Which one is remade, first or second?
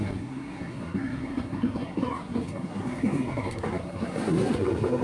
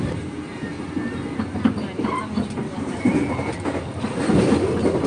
first